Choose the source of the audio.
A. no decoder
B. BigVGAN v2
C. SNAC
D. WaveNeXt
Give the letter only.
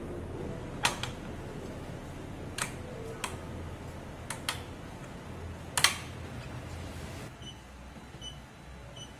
A